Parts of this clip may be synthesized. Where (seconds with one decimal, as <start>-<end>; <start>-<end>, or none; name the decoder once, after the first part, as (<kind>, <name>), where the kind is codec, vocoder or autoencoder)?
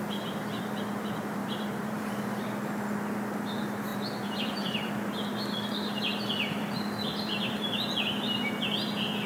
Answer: 1.4-2.1 (vocoder, BigVGAN v2); 3.9-4.9; 7.1-7.7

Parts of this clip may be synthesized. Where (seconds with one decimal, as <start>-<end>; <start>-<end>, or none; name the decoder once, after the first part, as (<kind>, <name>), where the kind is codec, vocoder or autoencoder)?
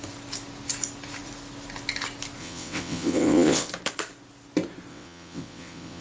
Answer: 2.4-3.7 (vocoder, WaveNeXt); 4.9-6.0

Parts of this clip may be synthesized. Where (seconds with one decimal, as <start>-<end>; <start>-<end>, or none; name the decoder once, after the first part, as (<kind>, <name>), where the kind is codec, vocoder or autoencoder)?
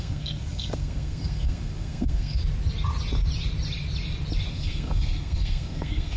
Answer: 0.0-2.4 (codec, SNAC); 4.5-6.2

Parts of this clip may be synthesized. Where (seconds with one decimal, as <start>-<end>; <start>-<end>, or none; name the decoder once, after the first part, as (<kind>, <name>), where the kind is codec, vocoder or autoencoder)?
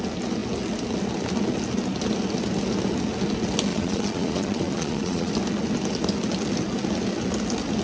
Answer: 3.7-5.3 (vocoder, Vocos)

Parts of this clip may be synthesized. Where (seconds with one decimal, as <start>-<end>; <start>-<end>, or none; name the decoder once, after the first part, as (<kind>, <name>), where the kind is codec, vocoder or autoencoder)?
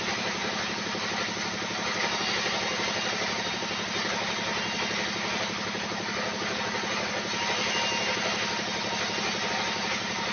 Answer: none